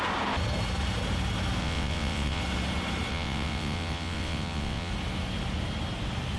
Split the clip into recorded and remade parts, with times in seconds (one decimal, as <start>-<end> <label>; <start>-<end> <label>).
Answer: 0.0-1.6 recorded; 1.6-2.4 remade; 2.4-3.1 recorded; 3.1-4.9 remade; 4.9-6.4 recorded

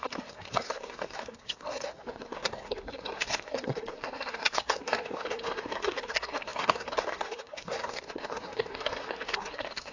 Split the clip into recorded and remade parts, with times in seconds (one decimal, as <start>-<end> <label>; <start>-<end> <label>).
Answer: 0.0-9.9 remade

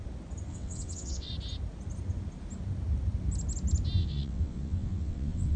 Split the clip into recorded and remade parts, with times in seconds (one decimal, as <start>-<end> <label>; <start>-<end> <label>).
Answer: 0.0-0.5 recorded; 0.5-1.3 remade; 1.3-4.0 recorded; 4.0-5.6 remade

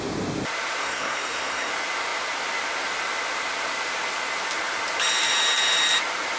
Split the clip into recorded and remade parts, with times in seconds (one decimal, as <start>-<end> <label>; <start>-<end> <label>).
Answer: 0.0-0.8 recorded; 0.8-1.7 remade; 1.7-6.4 recorded

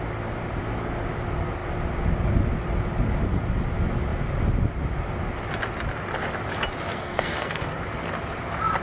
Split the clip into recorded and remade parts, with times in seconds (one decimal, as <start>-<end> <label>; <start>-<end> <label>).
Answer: 0.0-6.9 recorded; 6.9-7.8 remade; 7.8-8.8 recorded